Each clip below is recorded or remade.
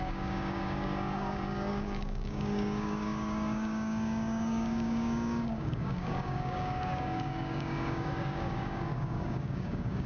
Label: remade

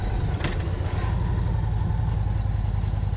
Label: recorded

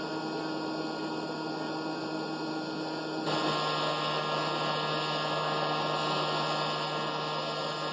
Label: recorded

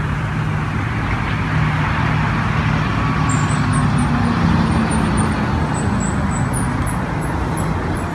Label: recorded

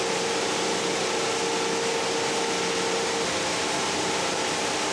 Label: recorded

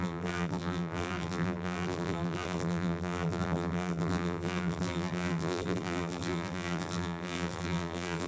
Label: remade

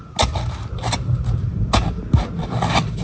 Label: recorded